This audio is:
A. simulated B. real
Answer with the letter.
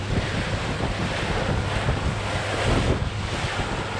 B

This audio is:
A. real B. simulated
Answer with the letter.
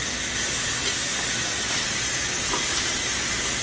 A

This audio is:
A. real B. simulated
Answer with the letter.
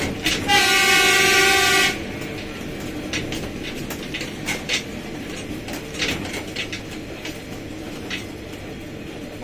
A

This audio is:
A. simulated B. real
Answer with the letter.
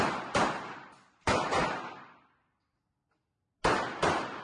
B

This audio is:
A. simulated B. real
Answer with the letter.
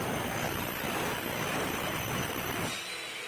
A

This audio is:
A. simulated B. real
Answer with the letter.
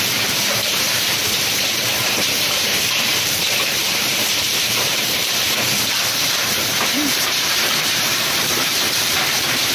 A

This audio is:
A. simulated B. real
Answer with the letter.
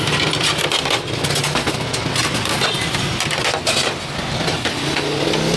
B